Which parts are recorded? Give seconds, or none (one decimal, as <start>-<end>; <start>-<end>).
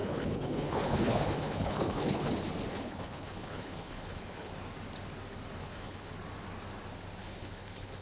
2.3-2.7; 4.5-5.6; 6.1-7.2